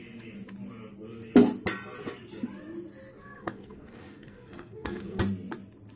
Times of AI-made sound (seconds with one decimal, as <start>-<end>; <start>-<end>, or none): 3.2-5.2